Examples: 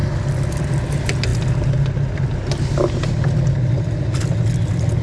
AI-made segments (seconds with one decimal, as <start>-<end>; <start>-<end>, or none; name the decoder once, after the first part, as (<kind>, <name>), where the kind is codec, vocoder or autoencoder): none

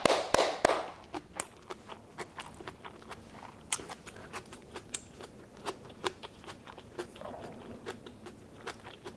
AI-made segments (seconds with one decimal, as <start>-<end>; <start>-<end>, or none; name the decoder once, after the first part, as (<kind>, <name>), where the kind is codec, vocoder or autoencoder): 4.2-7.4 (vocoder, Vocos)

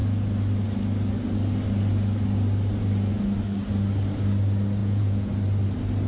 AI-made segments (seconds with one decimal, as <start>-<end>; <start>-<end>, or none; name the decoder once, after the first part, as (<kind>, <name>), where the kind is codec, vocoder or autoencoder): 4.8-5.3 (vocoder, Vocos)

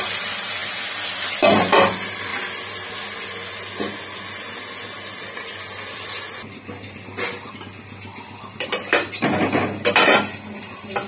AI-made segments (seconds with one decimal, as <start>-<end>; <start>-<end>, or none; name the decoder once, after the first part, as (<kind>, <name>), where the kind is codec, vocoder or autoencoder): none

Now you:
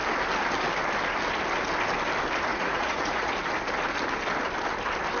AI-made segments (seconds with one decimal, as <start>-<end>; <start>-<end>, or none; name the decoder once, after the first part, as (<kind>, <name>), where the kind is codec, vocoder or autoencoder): 2.5-3.3 (vocoder, Vocos)